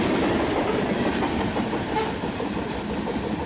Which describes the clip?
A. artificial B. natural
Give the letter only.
B